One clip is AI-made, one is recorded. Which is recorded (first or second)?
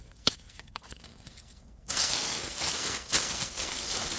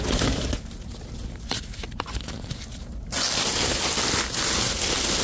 second